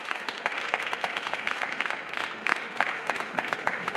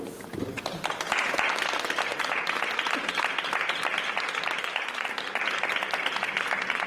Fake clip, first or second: first